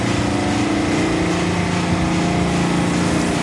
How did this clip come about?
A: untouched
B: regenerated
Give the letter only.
A